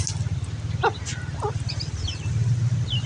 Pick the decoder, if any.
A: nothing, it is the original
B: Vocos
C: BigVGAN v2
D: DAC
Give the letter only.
A